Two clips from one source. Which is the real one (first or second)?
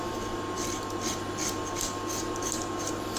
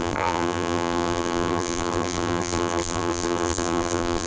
first